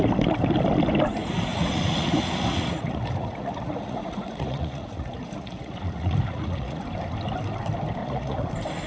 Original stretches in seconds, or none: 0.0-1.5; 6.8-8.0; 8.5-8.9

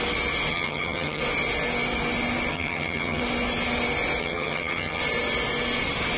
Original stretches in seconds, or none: 0.0-0.5; 1.2-2.5; 3.2-4.2; 5.0-6.2

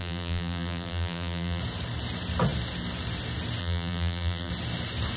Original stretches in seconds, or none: 1.6-3.6; 4.5-5.2

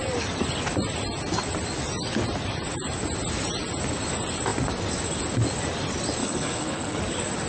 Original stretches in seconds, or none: 0.0-6.2; 7.0-7.5

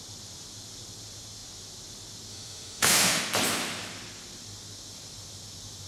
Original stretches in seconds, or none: 0.0-2.3; 3.2-5.9